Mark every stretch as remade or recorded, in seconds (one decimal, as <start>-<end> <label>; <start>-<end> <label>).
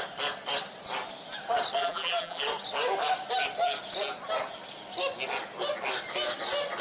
0.0-1.8 recorded; 1.8-2.4 remade; 2.4-6.8 recorded